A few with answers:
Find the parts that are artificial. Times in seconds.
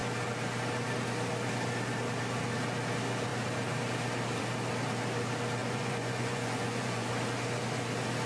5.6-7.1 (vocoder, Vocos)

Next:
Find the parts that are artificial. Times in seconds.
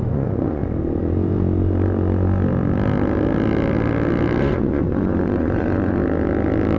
0.0-0.6 (vocoder, Vocos); 4.4-6.0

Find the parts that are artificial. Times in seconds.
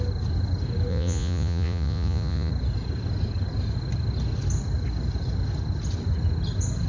0.9-2.5 (vocoder, Vocos)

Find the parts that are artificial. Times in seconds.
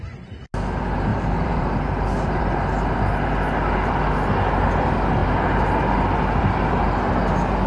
1.1-2.4 (vocoder, BigVGAN v2)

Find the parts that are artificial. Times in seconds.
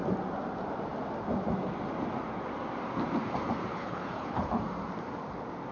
3.7-4.6 (codec, HILCodec)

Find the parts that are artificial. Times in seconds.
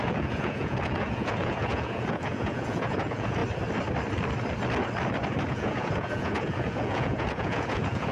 0.0-3.4 (vocoder, Vocos); 5.5-8.1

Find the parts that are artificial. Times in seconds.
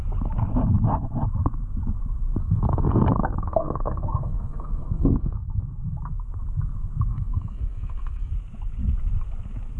2.4-5.6 (codec, SNAC); 7.1-8.3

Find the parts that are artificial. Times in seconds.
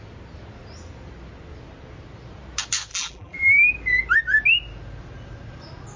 2.9-3.7 (vocoder, BigVGAN v2)